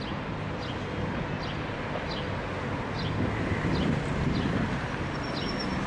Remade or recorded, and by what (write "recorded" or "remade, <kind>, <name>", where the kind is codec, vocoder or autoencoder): recorded